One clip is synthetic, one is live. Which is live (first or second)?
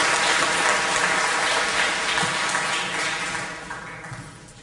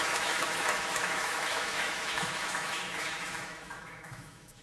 first